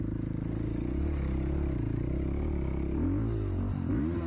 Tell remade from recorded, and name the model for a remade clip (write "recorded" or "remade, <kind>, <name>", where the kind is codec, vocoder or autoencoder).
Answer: recorded